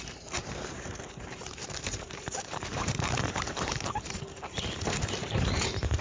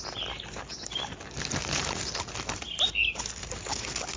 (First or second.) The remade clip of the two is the first